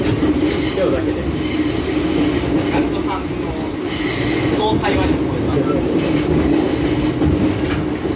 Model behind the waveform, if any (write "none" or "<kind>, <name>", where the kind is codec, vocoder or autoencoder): none